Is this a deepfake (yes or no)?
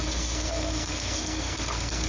yes